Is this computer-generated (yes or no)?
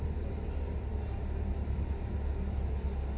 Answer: no